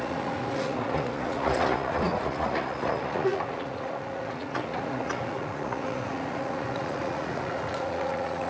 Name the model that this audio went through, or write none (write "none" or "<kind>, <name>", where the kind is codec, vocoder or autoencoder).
vocoder, Vocos